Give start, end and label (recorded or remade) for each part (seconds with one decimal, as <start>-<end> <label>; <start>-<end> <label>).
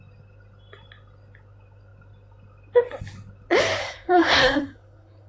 0.0-3.8 recorded; 3.8-5.3 remade